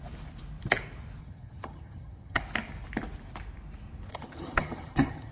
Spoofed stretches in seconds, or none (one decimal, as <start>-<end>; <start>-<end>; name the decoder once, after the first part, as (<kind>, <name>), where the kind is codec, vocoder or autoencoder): 1.2-2.4 (vocoder, HiFi-GAN); 4.1-5.3